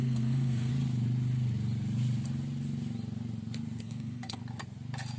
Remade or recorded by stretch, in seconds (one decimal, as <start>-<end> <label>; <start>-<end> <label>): 0.0-0.7 remade; 0.7-3.8 recorded; 3.8-4.4 remade; 4.4-5.2 recorded